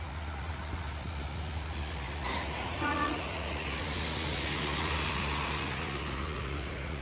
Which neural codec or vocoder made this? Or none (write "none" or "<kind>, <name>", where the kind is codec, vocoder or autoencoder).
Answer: vocoder, Vocos